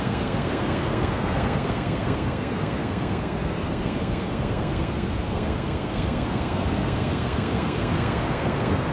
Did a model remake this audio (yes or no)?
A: yes